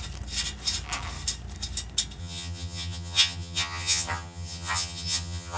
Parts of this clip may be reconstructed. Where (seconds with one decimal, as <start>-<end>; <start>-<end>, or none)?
2.2-5.6